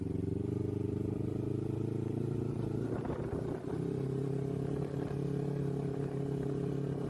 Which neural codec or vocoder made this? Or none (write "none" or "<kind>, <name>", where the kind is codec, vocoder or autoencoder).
none